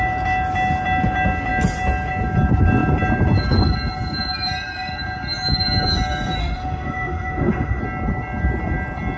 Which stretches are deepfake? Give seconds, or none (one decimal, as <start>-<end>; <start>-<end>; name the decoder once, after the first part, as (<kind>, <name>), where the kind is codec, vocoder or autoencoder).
6.4-7.8 (autoencoder, DAC-VAE)